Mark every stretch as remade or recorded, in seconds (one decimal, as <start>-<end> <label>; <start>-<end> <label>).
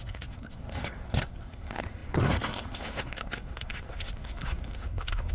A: 0.0-5.3 remade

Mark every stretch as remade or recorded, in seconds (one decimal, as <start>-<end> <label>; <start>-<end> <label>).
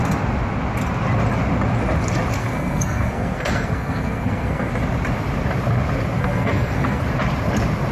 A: 0.0-2.4 recorded; 2.4-4.7 remade; 4.7-6.2 recorded; 6.2-7.0 remade; 7.0-7.9 recorded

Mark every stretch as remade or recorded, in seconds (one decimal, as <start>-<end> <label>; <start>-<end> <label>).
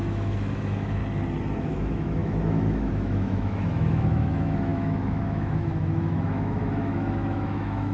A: 0.0-1.0 remade; 1.0-1.6 recorded; 1.6-7.9 remade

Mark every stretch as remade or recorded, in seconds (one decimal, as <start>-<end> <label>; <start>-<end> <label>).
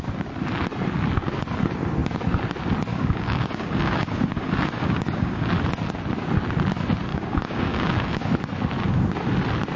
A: 0.0-2.9 recorded; 2.9-5.5 remade; 5.5-7.1 recorded; 7.1-8.3 remade; 8.3-9.8 recorded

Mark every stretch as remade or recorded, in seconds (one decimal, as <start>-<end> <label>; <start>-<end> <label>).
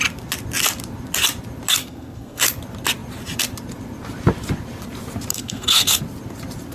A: 0.0-1.8 recorded; 1.8-2.4 remade; 2.4-5.3 recorded; 5.3-6.0 remade; 6.0-6.7 recorded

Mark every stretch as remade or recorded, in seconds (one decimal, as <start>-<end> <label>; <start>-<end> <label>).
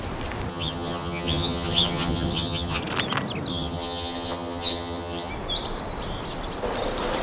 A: 0.0-0.5 recorded; 0.5-2.8 remade; 2.8-3.5 recorded; 3.5-5.3 remade; 5.3-7.2 recorded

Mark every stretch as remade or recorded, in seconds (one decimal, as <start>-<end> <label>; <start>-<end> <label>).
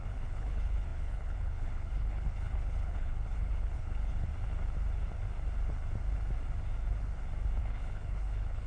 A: 0.0-4.3 remade; 4.3-7.6 recorded; 7.6-8.7 remade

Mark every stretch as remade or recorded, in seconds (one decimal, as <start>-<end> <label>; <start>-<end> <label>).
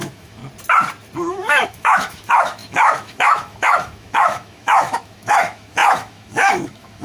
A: 0.0-0.4 remade; 0.4-1.3 recorded; 1.3-7.0 remade